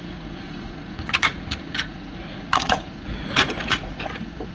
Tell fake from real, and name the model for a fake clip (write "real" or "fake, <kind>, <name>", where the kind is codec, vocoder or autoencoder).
fake, vocoder, Vocos